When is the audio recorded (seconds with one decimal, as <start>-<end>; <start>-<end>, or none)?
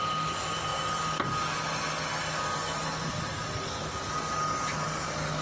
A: 0.0-5.4